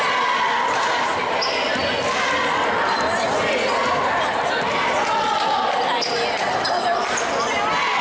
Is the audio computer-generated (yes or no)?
no